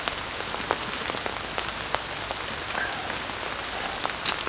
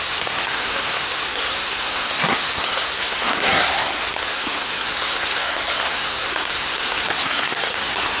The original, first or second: first